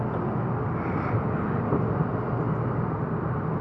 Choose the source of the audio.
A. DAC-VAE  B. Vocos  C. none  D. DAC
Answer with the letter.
C